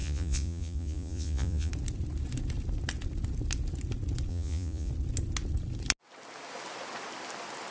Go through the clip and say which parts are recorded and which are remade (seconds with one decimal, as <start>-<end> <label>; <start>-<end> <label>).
0.0-1.7 remade; 1.7-4.3 recorded; 4.3-4.9 remade; 4.9-7.7 recorded